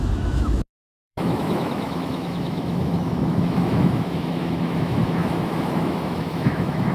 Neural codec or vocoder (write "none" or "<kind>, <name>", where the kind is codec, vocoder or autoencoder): autoencoder, DAC-VAE